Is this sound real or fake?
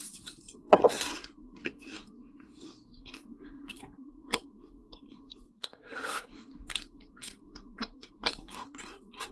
fake